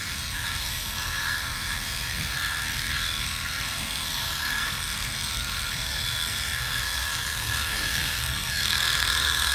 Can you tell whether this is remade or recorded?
remade